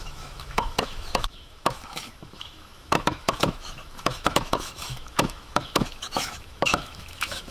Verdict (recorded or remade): remade